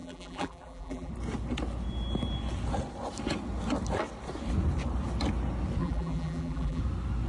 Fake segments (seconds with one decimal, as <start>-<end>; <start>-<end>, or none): 0.0-1.1; 5.8-6.8